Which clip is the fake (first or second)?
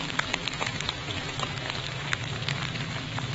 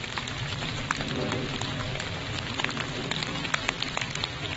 first